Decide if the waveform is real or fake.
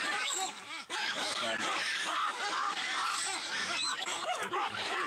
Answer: fake